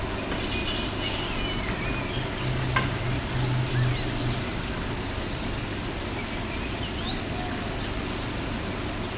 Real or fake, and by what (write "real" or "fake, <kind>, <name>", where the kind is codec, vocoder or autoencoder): real